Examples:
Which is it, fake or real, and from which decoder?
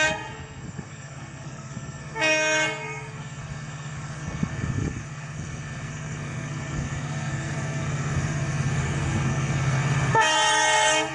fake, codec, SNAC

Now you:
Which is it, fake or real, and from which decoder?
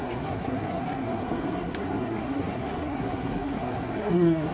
fake, codec, SNAC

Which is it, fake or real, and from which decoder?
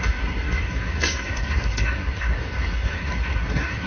fake, codec, SNAC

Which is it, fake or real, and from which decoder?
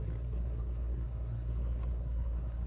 fake, codec, SNAC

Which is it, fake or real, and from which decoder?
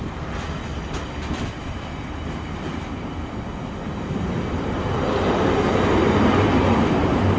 real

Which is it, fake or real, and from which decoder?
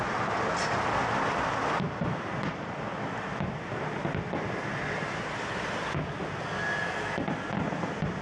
real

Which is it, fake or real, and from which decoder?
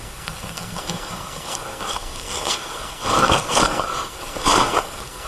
fake, codec, SNAC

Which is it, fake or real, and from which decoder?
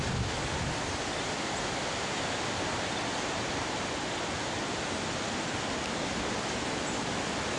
real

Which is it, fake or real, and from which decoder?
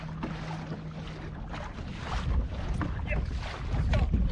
real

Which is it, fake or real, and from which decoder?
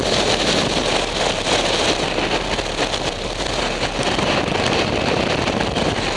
real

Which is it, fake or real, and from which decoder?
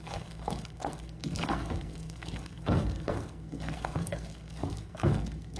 fake, codec, SNAC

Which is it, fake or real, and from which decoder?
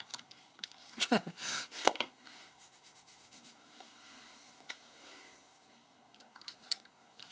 fake, codec, SNAC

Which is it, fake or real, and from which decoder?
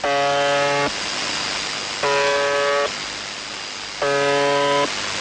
real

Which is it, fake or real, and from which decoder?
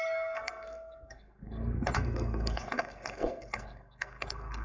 fake, codec, SNAC